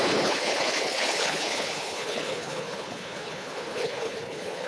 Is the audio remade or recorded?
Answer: remade